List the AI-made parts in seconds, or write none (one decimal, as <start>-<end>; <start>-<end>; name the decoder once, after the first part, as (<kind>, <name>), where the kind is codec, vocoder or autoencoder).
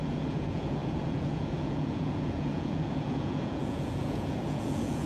0.0-5.1 (vocoder, Vocos)